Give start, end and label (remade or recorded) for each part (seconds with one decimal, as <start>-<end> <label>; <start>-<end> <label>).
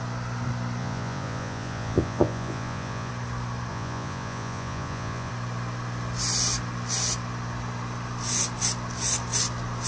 0.0-0.8 recorded; 0.8-3.1 remade; 3.1-3.7 recorded; 3.7-5.3 remade; 5.3-9.9 recorded